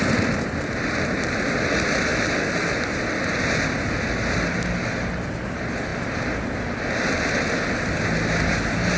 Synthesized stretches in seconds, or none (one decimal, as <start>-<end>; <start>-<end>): none